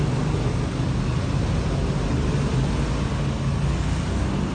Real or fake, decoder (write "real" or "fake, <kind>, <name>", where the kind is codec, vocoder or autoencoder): real